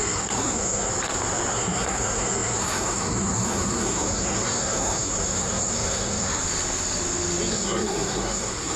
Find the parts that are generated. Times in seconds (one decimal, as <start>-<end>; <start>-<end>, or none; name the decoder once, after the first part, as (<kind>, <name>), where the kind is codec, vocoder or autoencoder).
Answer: 0.0-0.9 (codec, SNAC); 1.5-6.4; 7.5-8.8